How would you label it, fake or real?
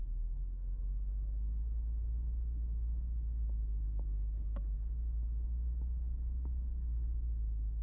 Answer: real